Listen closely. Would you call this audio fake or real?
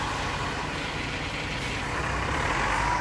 real